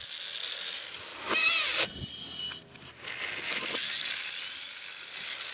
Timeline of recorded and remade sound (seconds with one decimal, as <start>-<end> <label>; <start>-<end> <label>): 0.0-5.5 recorded